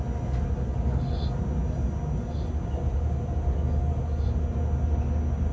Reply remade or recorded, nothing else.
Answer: recorded